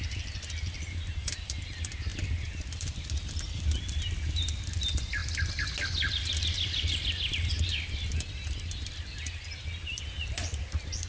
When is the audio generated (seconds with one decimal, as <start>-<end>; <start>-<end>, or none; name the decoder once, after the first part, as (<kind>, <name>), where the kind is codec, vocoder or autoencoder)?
none